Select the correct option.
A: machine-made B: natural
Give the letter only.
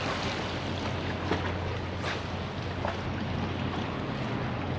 B